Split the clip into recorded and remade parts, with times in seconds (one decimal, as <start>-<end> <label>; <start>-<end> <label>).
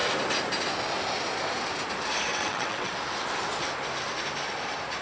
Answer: 0.0-2.3 recorded; 2.3-2.9 remade; 2.9-5.0 recorded